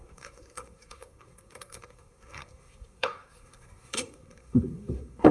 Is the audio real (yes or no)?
no